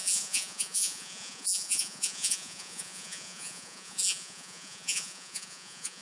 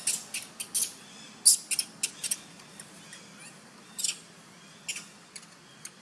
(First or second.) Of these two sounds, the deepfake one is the first